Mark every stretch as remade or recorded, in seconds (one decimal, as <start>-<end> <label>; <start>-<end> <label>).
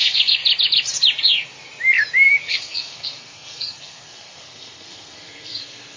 0.0-0.4 remade; 0.4-2.5 recorded; 2.5-6.0 remade